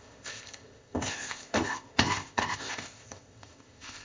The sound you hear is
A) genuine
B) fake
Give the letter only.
B